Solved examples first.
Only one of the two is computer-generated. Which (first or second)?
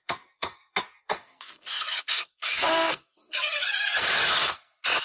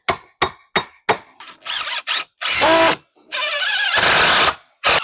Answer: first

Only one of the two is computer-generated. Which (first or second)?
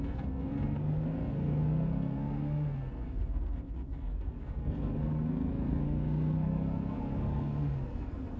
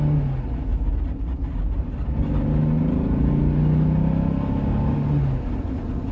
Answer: first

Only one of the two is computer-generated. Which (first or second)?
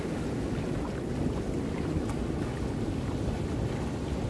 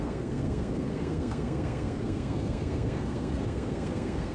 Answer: second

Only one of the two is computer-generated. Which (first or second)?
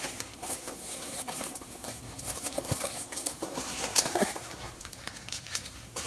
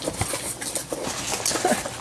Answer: first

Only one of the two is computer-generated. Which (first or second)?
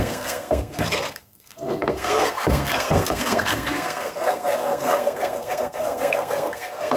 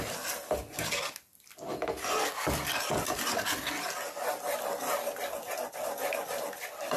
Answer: first